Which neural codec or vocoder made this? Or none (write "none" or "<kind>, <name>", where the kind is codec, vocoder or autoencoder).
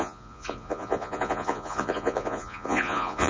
vocoder, Vocos